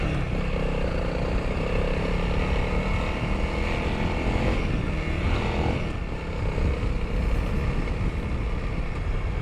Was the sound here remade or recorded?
recorded